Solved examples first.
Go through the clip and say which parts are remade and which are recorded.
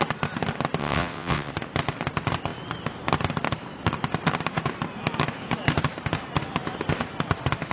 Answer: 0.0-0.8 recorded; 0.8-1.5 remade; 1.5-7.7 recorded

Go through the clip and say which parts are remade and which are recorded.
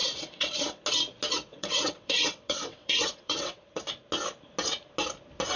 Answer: 0.0-0.8 remade; 0.8-1.5 recorded; 1.5-3.8 remade; 3.8-5.6 recorded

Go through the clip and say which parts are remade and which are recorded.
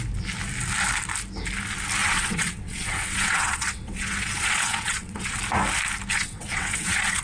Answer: 0.0-2.0 recorded; 2.0-5.4 remade; 5.4-6.1 recorded; 6.1-7.2 remade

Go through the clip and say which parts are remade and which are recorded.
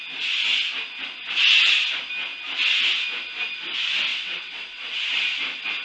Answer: 0.0-4.1 recorded; 4.1-5.0 remade; 5.0-5.8 recorded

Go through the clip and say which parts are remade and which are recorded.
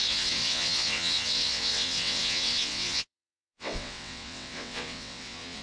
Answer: 0.0-5.6 remade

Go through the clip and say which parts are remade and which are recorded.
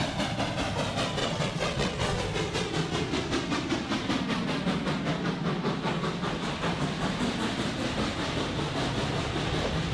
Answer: 0.0-1.2 recorded; 1.2-2.2 remade; 2.2-9.9 recorded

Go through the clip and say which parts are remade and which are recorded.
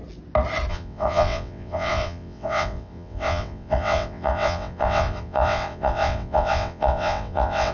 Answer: 0.0-0.7 recorded; 0.7-7.7 remade